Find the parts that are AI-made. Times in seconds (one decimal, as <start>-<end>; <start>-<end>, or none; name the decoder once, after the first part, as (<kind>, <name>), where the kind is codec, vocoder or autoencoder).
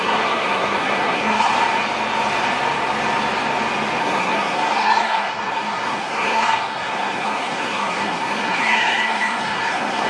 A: 0.0-1.6 (codec, SNAC); 4.0-10.1